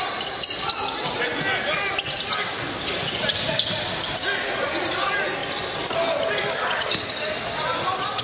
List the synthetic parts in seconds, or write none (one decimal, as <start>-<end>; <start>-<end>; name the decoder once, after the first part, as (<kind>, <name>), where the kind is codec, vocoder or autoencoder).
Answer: none